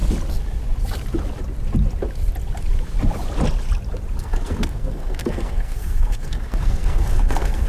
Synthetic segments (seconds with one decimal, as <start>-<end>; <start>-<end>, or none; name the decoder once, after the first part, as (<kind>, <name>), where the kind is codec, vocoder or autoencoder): 4.2-7.7 (codec, SNAC)